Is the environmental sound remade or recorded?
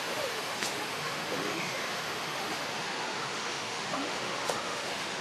remade